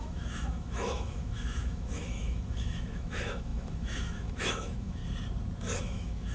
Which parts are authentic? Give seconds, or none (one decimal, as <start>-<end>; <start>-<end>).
5.0-5.8